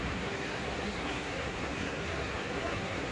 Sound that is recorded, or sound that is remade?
remade